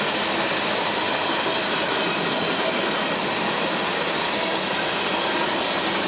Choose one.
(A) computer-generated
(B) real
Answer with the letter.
B